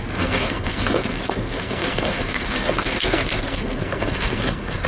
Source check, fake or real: fake